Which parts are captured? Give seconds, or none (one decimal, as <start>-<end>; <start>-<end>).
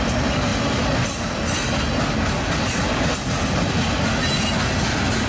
0.0-5.3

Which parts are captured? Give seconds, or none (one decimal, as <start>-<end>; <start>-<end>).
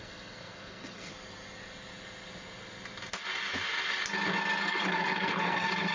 1.1-4.6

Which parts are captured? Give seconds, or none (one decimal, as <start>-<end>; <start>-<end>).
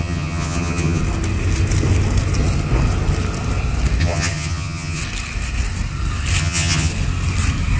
1.0-4.0; 5.0-6.4; 6.9-7.8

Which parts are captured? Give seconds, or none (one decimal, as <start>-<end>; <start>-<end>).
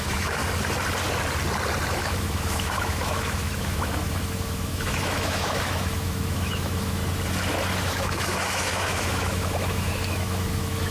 0.4-1.9; 7.0-7.8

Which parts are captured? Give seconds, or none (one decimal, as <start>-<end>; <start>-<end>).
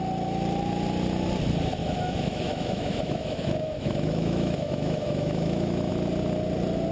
0.0-1.8; 5.9-6.9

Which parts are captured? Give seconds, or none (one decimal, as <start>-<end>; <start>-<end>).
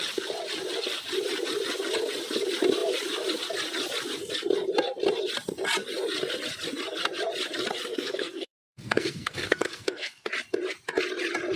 0.0-7.9; 10.3-11.6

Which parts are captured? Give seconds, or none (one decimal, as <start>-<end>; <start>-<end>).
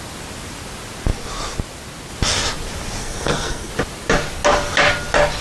0.0-3.0; 3.7-5.4